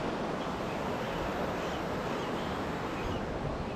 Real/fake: real